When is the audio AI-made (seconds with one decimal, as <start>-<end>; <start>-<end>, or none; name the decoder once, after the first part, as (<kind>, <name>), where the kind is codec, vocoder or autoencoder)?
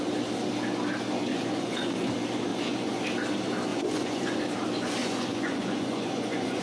1.3-2.1 (vocoder, Vocos); 2.5-3.0; 3.7-4.4; 5.0-6.6